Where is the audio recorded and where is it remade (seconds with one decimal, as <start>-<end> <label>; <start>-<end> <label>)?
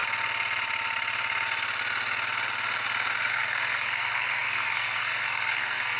0.0-3.3 recorded; 3.3-6.0 remade